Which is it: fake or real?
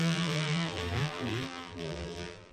fake